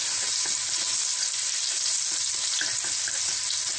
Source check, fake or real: real